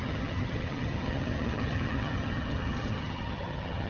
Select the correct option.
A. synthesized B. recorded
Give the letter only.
A